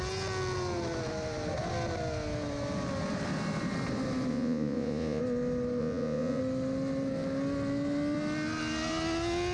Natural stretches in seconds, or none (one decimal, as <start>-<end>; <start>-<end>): 0.0-4.3; 5.2-5.8; 6.4-9.5